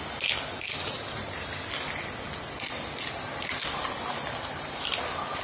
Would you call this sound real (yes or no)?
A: yes